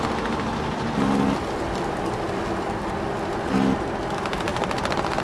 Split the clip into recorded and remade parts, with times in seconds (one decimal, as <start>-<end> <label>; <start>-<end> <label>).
0.0-5.2 recorded